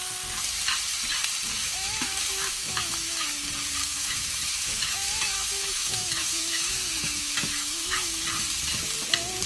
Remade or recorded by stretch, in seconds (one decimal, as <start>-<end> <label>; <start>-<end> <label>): 0.0-1.5 recorded; 1.5-3.3 remade; 3.3-3.8 recorded; 3.8-8.2 remade; 8.2-9.5 recorded